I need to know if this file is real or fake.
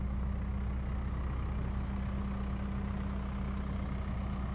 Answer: real